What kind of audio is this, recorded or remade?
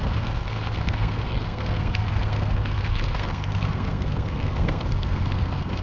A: remade